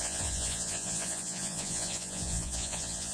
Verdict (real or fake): fake